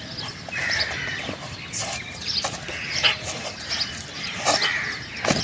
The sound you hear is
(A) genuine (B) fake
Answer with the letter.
A